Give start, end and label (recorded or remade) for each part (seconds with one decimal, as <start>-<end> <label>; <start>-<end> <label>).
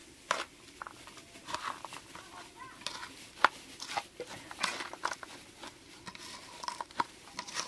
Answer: 0.0-7.7 recorded